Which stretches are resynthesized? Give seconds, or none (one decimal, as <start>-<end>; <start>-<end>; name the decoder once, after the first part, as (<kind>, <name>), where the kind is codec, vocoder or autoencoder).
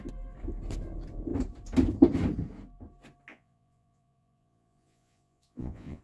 3.3-6.0 (vocoder, Vocos)